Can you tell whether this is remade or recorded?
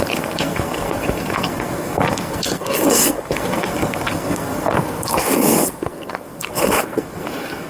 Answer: remade